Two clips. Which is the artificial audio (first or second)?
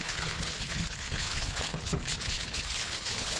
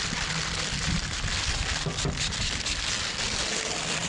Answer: first